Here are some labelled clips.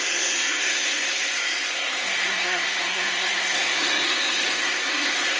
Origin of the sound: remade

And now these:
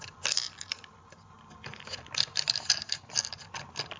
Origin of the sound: recorded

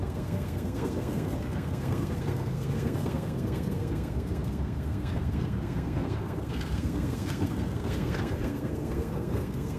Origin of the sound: remade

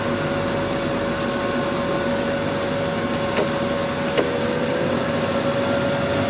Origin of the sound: recorded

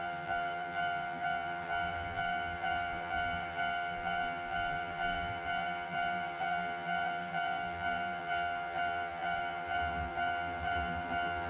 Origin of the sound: remade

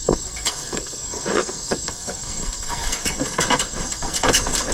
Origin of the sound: remade